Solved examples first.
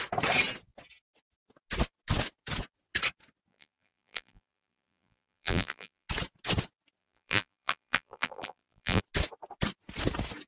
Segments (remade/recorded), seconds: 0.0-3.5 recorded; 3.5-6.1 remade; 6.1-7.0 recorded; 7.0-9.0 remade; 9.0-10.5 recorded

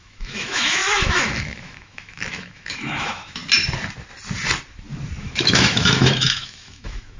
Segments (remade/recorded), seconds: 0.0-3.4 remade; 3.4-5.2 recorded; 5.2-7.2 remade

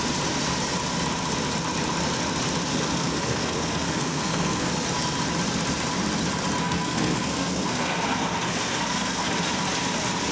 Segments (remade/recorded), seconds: 0.0-2.7 recorded; 2.7-4.7 remade; 4.7-6.6 recorded; 6.6-9.3 remade; 9.3-10.3 recorded